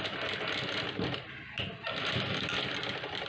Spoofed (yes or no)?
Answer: no